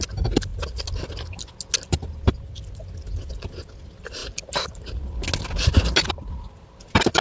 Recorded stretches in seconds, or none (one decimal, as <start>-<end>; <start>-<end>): 0.0-7.2